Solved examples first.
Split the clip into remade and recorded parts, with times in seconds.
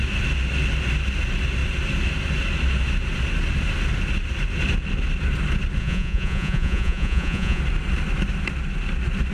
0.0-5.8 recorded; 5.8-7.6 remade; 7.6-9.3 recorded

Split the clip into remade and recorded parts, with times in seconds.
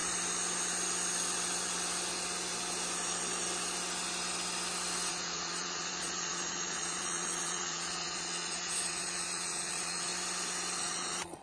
0.0-5.1 recorded; 5.1-10.1 remade; 10.1-10.8 recorded; 10.8-11.4 remade